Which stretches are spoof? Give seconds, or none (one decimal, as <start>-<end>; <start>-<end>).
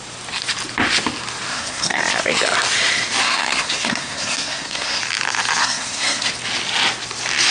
1.5-2.0; 3.2-5.0; 5.6-6.3